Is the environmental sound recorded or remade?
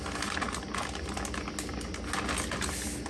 recorded